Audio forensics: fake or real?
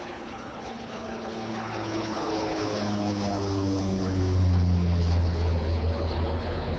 fake